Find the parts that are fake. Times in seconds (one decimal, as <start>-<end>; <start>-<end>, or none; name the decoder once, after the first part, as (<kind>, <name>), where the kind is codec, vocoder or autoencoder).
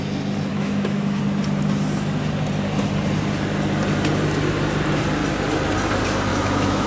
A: 0.5-1.2 (autoencoder, DAC-VAE); 6.3-6.9